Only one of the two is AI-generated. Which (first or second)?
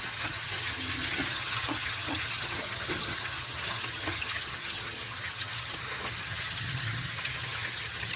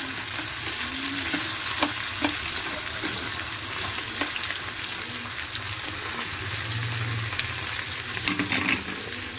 first